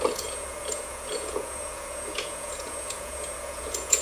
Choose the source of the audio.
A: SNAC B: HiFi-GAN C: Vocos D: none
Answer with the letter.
C